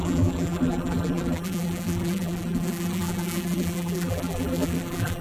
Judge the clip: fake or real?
fake